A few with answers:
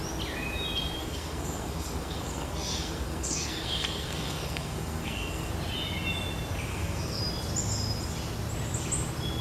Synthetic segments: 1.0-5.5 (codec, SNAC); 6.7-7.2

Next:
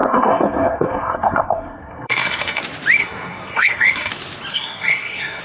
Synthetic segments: 0.0-2.6 (codec, SNAC); 3.0-4.1; 4.5-5.4

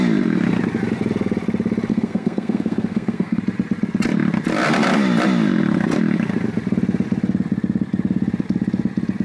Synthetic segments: 1.9-3.4 (codec, SNAC)

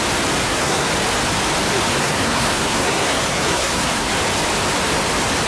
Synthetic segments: 0.4-0.9 (codec, SNAC); 2.0-4.1